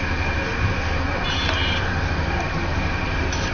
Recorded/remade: recorded